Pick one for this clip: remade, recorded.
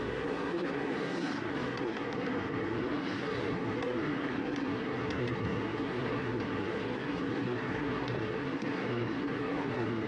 remade